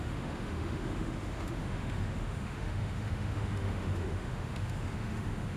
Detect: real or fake fake